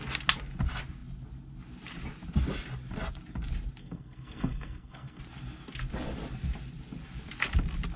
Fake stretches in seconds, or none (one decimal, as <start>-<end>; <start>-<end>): 3.8-5.2